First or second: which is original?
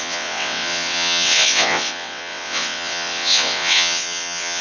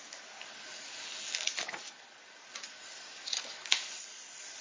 second